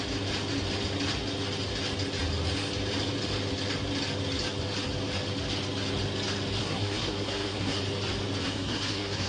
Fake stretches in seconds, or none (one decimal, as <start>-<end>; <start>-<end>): 6.6-7.8; 8.4-9.3